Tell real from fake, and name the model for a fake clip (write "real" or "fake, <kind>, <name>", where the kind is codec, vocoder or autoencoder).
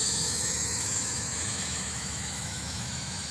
fake, autoencoder, DAC-VAE